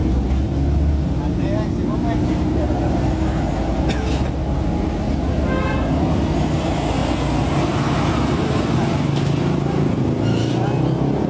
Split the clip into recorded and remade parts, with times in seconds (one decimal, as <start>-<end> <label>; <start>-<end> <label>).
0.0-11.3 recorded